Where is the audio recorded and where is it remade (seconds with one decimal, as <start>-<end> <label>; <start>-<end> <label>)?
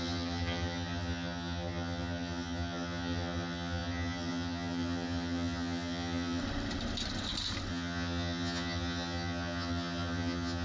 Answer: 0.0-6.4 remade; 6.4-7.7 recorded; 7.7-10.6 remade